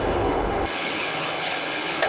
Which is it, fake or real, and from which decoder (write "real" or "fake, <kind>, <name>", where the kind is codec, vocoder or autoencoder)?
fake, codec, HILCodec